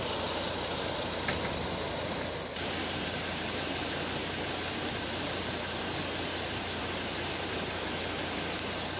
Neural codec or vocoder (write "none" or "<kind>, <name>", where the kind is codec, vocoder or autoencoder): none